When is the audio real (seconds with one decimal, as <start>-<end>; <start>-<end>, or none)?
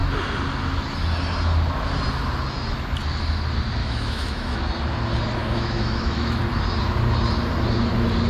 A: 0.0-3.8; 4.6-5.4; 6.4-8.3